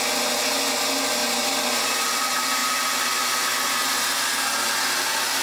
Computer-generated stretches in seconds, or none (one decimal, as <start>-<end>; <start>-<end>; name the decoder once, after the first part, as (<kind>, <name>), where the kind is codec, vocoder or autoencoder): none